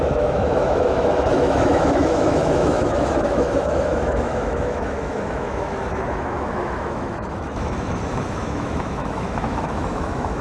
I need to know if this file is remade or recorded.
remade